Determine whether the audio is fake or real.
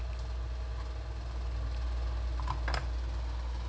real